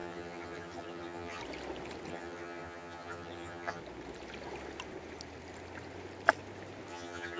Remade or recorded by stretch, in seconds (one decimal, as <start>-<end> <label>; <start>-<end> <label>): 0.0-1.4 remade; 1.4-2.1 recorded; 2.1-3.8 remade; 3.8-6.9 recorded; 6.9-7.4 remade